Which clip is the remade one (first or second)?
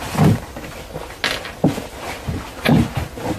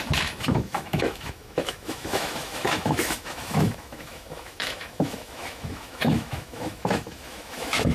second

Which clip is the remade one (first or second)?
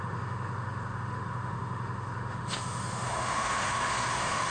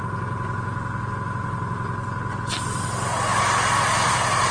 first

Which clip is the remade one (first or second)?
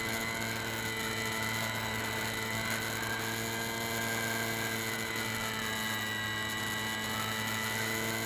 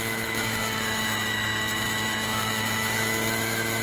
second